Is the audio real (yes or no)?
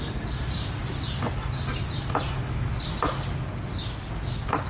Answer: yes